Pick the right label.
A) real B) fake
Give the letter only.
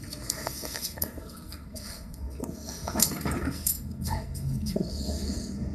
B